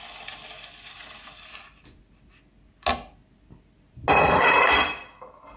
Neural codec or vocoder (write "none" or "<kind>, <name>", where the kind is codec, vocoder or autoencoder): none